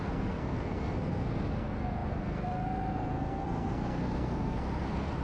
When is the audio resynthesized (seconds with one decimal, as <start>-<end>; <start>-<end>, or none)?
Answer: 0.0-5.2